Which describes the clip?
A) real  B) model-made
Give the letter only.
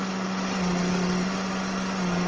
A